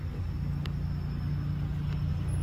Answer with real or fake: real